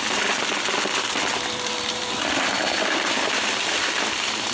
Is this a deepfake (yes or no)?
yes